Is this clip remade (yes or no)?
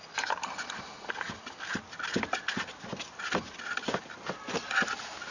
no